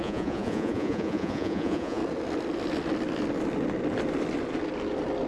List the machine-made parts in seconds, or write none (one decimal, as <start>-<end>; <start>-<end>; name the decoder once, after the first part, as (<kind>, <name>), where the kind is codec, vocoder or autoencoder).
0.0-2.0 (vocoder, Vocos)